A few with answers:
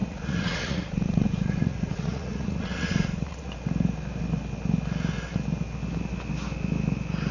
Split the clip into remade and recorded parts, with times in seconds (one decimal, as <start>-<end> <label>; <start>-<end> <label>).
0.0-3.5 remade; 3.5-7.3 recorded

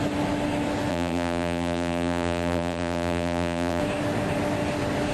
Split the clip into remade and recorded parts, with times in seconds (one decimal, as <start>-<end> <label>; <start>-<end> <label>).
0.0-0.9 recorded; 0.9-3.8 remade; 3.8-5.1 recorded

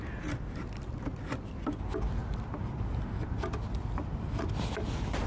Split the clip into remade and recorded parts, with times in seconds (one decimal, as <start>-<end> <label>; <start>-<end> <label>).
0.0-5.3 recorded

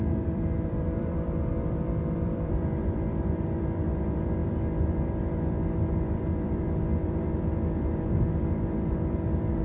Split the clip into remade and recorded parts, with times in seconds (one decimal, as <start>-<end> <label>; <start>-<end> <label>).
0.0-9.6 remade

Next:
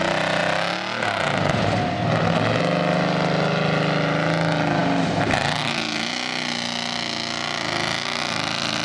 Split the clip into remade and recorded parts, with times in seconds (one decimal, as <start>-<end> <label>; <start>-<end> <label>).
0.0-8.8 recorded

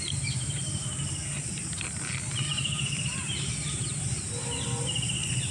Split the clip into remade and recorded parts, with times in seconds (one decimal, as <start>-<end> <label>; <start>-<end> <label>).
0.0-5.5 recorded